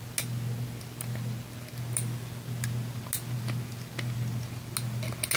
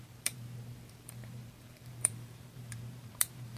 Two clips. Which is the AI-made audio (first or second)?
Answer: second